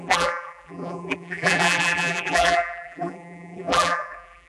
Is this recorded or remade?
remade